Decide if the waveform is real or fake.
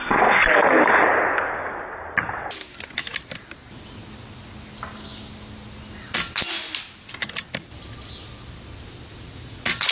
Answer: real